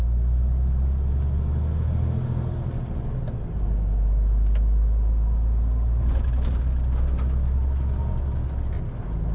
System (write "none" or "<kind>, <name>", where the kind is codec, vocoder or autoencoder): none